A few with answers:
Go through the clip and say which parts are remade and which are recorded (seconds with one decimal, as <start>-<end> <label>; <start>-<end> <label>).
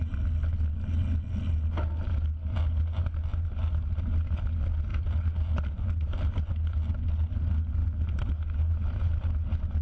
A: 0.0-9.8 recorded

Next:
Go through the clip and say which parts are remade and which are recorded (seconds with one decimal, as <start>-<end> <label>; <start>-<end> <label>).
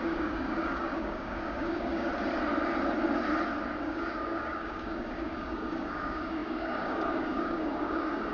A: 0.0-2.1 remade; 2.1-3.8 recorded; 3.8-8.3 remade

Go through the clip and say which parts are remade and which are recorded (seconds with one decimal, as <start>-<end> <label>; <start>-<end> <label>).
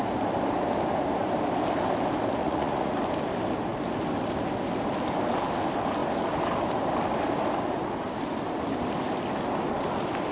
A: 0.0-2.4 recorded; 2.4-2.9 remade; 2.9-10.3 recorded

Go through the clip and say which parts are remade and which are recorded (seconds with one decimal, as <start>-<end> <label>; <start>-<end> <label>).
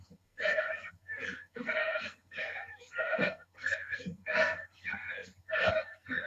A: 0.0-6.3 remade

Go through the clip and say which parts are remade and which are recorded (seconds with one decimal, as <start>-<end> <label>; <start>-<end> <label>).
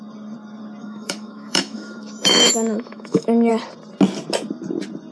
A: 0.0-0.8 recorded; 0.8-3.5 remade; 3.5-5.1 recorded